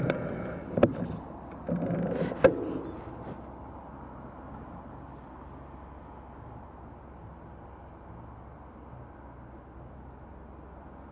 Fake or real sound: real